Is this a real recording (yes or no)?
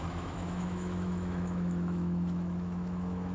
no